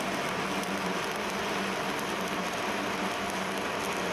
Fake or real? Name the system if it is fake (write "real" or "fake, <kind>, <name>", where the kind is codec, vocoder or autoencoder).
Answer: real